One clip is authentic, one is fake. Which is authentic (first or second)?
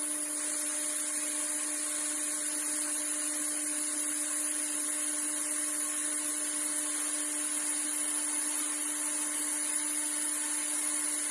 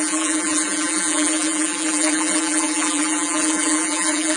first